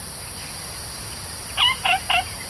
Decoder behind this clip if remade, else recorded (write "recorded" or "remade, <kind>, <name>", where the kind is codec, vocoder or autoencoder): recorded